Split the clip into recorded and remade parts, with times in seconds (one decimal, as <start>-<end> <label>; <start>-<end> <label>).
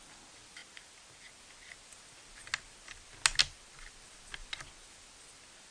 0.0-5.7 recorded